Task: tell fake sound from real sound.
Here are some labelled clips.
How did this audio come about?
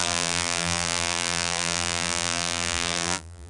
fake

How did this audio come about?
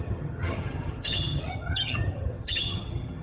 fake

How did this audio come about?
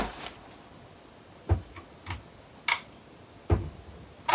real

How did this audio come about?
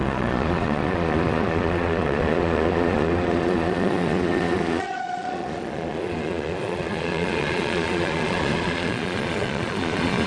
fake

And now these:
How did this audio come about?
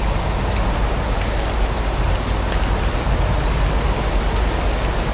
real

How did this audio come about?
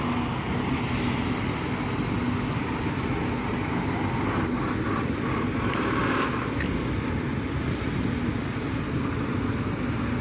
real